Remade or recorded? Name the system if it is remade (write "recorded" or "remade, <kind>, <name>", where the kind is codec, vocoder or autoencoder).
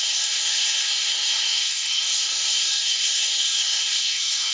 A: remade, codec, SNAC